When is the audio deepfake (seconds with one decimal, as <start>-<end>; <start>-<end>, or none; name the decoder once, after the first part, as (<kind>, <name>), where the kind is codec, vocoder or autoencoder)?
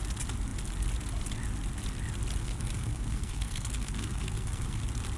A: 2.4-4.8 (codec, SNAC)